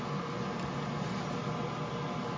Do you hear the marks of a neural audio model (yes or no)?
no